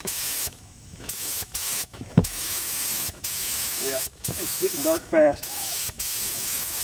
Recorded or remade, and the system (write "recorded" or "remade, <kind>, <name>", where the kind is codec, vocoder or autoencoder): remade, autoencoder, DAC-VAE